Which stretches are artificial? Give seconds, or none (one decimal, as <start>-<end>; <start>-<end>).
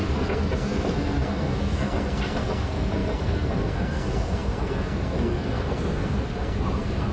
0.0-7.1